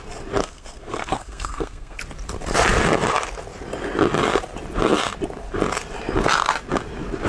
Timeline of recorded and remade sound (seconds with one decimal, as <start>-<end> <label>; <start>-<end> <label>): 0.0-0.4 recorded; 0.4-2.0 remade; 2.0-7.3 recorded